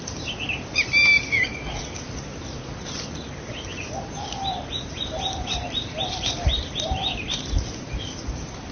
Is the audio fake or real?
fake